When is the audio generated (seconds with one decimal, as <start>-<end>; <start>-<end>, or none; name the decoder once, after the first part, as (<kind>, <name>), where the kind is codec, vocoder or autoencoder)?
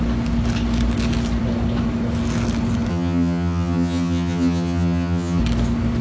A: 2.9-5.4 (vocoder, HiFi-GAN)